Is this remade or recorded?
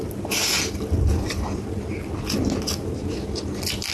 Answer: remade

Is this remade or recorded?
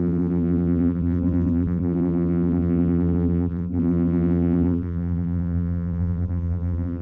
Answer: remade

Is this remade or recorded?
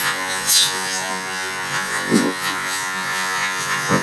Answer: remade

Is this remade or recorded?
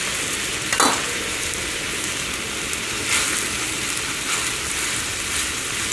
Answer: recorded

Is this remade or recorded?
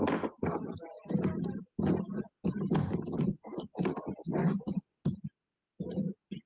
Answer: recorded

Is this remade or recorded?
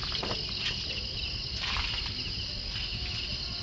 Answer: recorded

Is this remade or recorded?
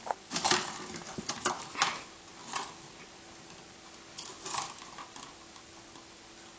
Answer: recorded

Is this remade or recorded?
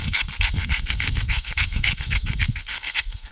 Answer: remade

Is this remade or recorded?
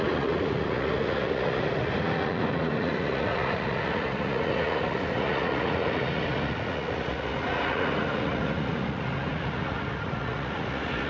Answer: remade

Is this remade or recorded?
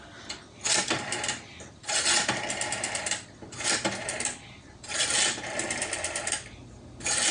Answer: recorded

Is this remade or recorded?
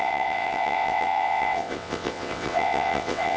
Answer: remade